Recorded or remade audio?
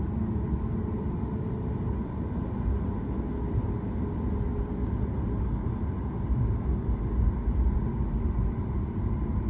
recorded